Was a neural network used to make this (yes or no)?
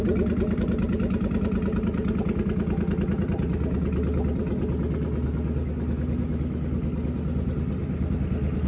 no